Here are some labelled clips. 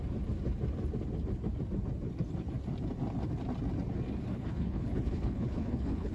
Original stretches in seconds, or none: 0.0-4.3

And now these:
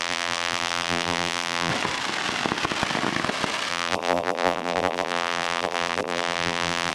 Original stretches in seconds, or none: 1.7-3.7

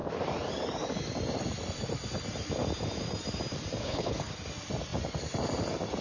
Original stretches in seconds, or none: 0.0-3.8; 4.3-6.0

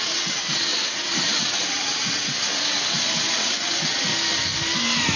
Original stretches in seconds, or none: 4.1-5.2

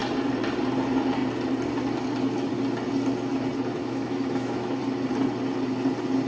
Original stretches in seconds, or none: 0.0-3.8; 4.8-6.3

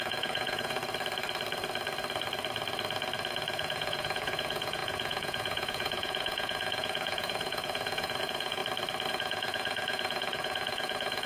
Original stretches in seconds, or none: 0.8-3.6; 8.6-9.1

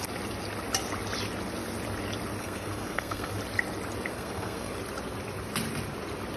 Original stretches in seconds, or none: 0.0-2.4; 3.3-4.1; 4.7-6.4

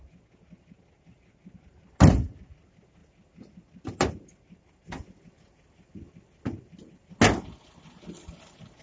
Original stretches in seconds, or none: 0.0-8.8